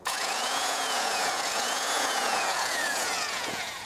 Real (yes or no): no